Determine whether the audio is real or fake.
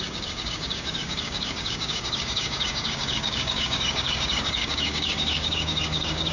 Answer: fake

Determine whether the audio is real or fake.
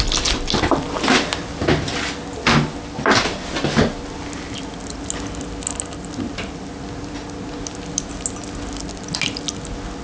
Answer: real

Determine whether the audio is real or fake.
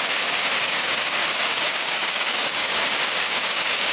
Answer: fake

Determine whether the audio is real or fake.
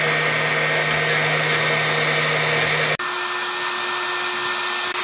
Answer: real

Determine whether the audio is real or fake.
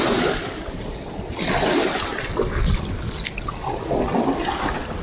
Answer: real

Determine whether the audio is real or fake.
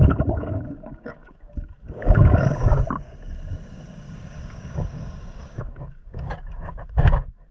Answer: fake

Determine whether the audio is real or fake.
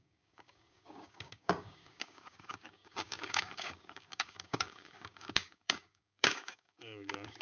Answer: fake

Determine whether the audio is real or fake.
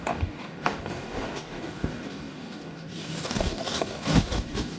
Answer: fake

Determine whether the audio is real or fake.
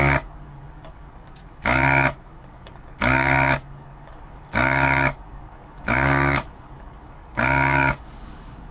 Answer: fake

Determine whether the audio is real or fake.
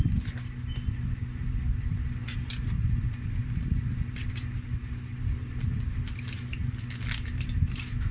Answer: real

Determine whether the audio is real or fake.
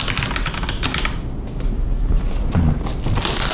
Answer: real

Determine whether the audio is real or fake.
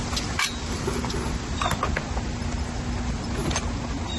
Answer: real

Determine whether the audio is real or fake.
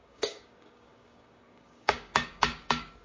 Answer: fake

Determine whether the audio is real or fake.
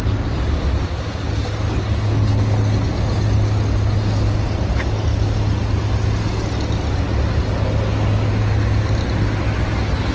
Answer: real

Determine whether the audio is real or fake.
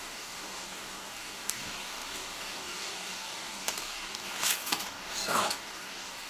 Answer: fake